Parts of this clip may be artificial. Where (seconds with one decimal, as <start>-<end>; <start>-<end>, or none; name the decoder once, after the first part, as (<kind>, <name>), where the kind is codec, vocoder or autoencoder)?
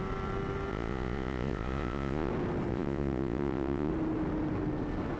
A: 0.7-2.3 (vocoder, Vocos); 2.7-3.9